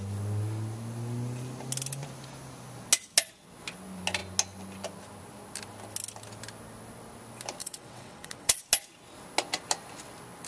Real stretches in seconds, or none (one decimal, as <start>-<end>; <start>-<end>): 0.0-7.6; 8.6-10.5